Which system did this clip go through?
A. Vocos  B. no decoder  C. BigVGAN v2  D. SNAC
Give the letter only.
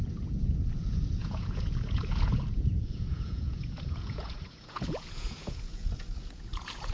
A